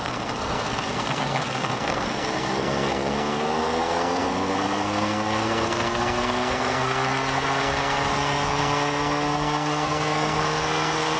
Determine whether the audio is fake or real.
fake